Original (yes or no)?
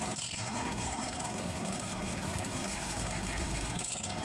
no